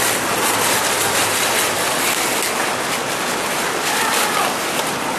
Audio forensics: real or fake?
real